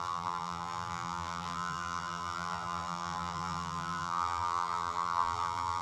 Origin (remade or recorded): remade